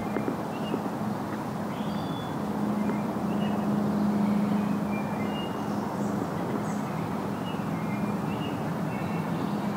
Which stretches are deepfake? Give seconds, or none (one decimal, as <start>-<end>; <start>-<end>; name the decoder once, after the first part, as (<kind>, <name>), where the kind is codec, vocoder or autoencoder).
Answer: none